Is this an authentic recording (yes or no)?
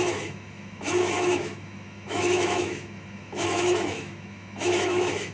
no